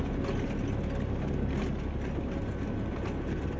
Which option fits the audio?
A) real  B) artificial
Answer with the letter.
A